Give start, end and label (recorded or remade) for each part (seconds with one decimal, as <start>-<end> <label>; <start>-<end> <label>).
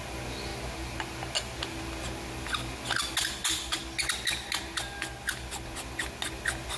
0.0-6.8 recorded